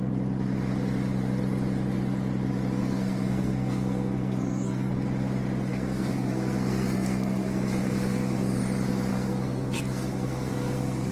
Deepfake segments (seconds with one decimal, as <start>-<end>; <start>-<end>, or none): 2.8-4.9; 5.7-8.6; 9.1-11.1